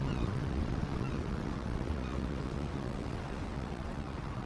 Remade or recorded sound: remade